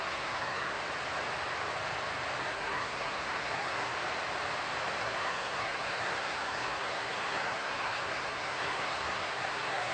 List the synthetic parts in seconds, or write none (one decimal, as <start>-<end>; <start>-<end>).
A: 0.0-0.8; 2.4-3.9; 5.0-9.9